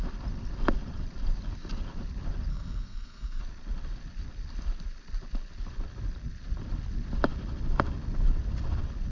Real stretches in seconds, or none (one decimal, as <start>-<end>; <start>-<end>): 0.0-2.5; 3.4-9.1